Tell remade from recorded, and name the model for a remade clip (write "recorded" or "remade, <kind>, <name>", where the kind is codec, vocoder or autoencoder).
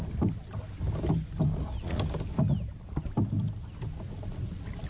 recorded